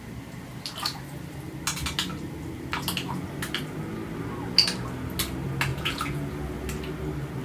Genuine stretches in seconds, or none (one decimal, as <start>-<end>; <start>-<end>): 0.0-5.7; 6.3-7.4